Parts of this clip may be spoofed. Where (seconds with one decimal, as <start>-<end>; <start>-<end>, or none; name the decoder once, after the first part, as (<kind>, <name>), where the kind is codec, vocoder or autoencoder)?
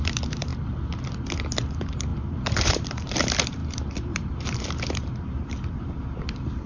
0.0-0.5 (vocoder, BigVGAN v2); 1.7-6.7